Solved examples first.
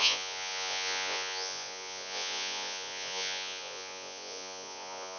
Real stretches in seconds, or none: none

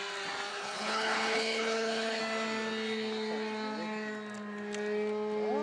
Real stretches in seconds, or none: 0.0-0.5; 2.2-5.6